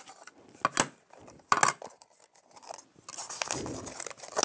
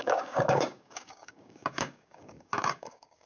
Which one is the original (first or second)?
first